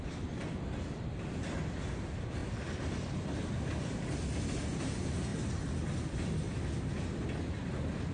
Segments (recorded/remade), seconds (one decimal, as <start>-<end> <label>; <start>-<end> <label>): 0.0-8.1 recorded